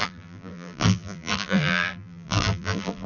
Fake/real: fake